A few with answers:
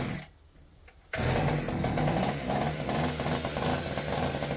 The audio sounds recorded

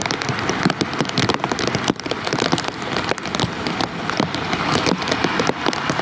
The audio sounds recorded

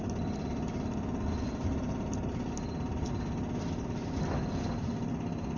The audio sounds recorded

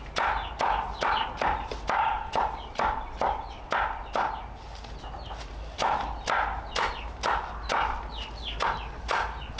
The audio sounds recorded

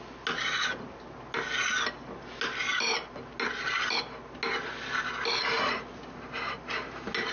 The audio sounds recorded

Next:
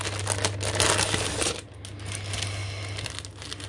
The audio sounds recorded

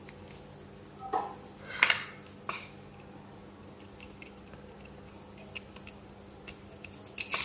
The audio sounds recorded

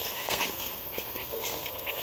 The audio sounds remade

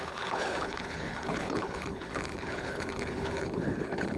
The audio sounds remade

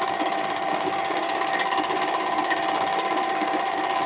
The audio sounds remade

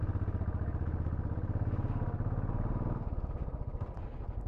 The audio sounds recorded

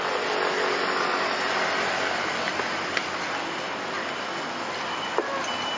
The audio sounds recorded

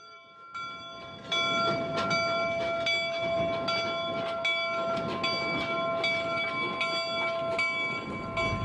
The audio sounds recorded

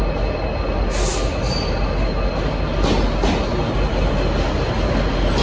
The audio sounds recorded